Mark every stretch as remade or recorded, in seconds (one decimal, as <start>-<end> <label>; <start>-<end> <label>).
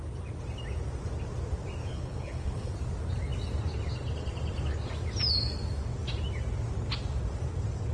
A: 0.0-1.8 recorded; 1.8-2.7 remade; 2.7-7.9 recorded